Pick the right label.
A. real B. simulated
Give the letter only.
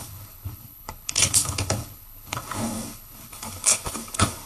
B